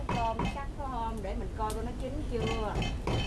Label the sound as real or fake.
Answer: real